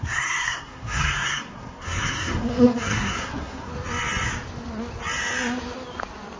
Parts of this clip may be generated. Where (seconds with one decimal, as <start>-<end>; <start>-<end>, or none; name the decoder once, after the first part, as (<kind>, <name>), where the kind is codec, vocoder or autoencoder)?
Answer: 0.0-3.7 (codec, SNAC)